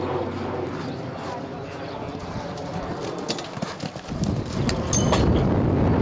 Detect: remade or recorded recorded